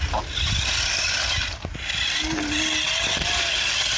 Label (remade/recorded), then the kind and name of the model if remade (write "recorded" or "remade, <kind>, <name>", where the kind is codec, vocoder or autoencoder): recorded